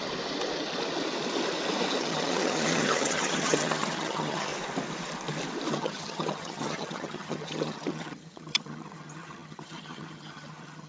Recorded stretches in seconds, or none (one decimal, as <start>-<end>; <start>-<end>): 0.0-2.0; 4.5-5.7